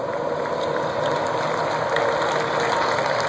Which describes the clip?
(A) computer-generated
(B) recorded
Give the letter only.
B